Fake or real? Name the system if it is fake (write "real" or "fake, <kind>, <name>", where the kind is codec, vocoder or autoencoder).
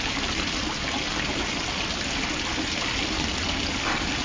real